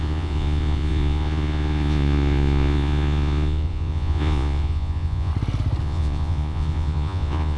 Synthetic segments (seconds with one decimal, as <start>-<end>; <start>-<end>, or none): 0.0-5.3; 5.8-7.6